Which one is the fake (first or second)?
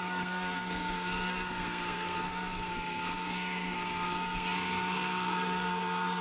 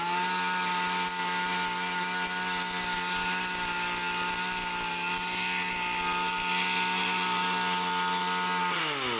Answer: first